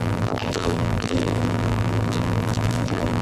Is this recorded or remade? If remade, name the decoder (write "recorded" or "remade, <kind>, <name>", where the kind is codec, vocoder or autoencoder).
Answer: remade, vocoder, BigVGAN v2